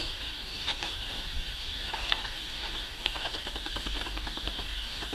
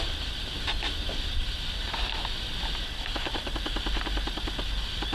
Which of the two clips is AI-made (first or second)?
first